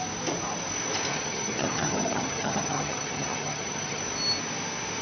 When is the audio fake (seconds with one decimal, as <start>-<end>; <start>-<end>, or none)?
1.1-4.0